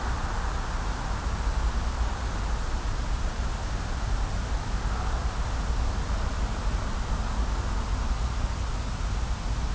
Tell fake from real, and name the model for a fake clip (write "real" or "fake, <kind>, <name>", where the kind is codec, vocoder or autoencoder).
real